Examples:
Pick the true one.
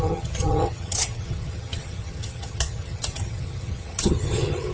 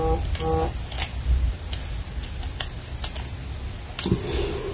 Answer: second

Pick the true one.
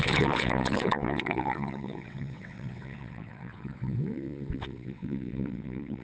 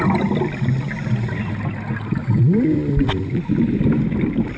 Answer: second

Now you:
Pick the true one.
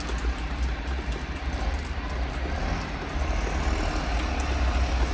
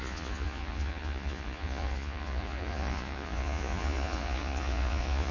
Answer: first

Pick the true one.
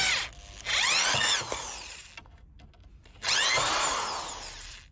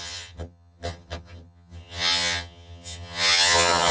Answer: first